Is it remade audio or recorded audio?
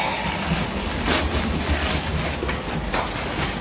recorded